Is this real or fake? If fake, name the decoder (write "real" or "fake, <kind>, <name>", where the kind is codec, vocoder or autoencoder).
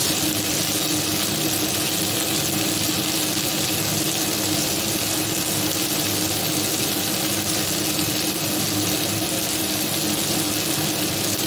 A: real